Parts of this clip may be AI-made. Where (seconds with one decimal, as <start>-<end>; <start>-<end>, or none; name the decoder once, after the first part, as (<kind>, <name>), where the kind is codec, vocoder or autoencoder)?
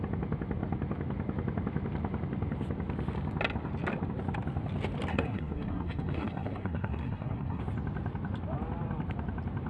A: 5.1-7.6 (codec, SNAC)